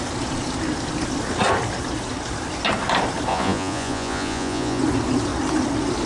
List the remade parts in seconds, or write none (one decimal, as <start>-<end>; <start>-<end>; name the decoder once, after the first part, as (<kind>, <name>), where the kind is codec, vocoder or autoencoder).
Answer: 3.3-4.8 (vocoder, Vocos)